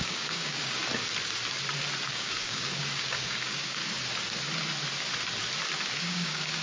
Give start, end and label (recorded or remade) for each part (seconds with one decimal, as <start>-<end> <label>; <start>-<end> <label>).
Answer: 0.0-0.8 remade; 0.8-2.1 recorded; 2.1-3.8 remade; 3.8-6.0 recorded; 6.0-6.6 remade